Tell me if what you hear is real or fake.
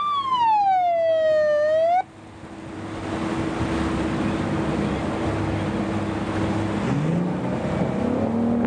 real